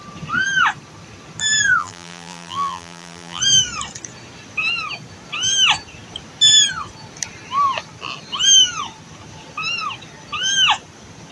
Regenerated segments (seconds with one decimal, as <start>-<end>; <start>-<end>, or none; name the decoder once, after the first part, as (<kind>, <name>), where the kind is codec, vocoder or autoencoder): 1.8-3.4 (vocoder, BigVGAN v2)